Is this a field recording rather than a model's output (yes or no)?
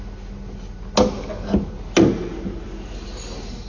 yes